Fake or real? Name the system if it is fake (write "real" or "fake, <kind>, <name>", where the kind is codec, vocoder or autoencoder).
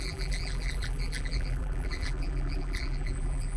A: fake, vocoder, BigVGAN v2